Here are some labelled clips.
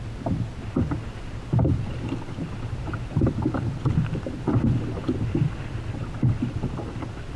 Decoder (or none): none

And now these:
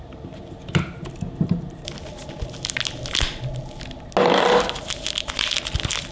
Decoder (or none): none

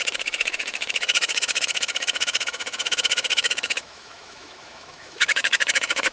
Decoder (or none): autoencoder, DAC-VAE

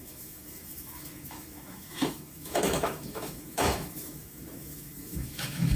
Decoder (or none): autoencoder, DAC-VAE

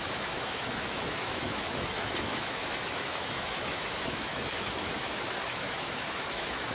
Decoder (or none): autoencoder, DAC-VAE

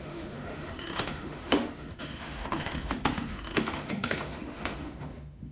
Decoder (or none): autoencoder, DAC-VAE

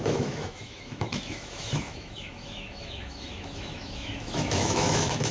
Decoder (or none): autoencoder, DAC-VAE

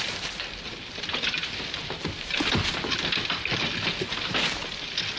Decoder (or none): none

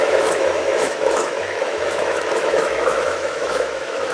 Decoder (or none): autoencoder, DAC-VAE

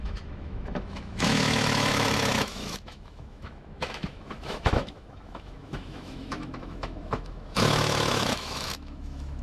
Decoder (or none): autoencoder, DAC-VAE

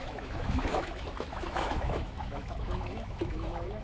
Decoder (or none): autoencoder, DAC-VAE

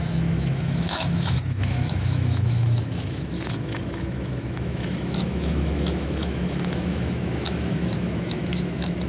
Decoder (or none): autoencoder, DAC-VAE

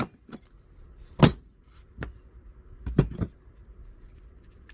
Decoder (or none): none